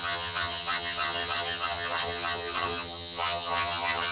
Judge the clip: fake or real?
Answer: fake